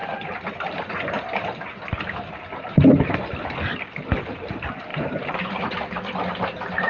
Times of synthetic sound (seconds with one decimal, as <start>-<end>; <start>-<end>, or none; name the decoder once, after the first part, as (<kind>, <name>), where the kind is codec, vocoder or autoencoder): 0.0-0.5 (vocoder, BigVGAN v2); 4.9-5.6

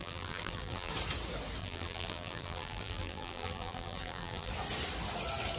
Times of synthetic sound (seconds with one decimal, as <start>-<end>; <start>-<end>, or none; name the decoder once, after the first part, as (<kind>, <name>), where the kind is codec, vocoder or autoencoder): 0.0-0.9 (vocoder, BigVGAN v2); 1.6-4.5

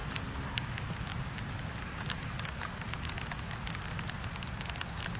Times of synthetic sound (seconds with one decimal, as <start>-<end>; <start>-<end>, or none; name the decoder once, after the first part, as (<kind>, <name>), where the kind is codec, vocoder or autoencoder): none

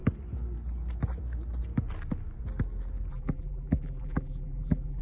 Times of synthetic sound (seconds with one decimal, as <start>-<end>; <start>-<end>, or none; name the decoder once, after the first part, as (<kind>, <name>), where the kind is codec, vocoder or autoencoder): 3.1-5.0 (vocoder, BigVGAN v2)

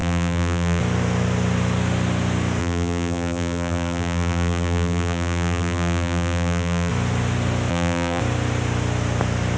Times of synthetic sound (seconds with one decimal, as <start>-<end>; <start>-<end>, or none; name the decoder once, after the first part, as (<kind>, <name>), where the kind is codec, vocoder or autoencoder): 0.0-0.8 (vocoder, BigVGAN v2); 2.6-6.9; 7.7-8.2

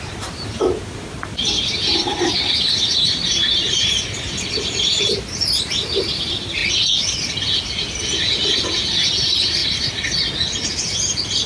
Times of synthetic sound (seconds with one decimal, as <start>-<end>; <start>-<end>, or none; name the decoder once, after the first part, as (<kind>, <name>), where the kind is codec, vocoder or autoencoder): 0.0-6.6 (vocoder, BigVGAN v2); 9.2-9.6

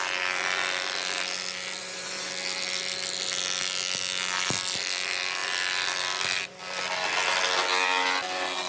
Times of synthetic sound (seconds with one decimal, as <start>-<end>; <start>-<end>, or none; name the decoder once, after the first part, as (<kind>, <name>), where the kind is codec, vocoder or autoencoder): 1.8-2.3 (vocoder, BigVGAN v2)

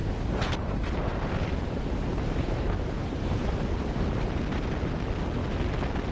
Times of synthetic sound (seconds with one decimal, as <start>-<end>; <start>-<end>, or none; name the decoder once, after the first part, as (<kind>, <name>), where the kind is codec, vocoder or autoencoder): 0.0-3.5 (vocoder, BigVGAN v2)